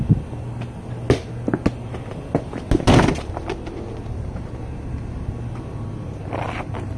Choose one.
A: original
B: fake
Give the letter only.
A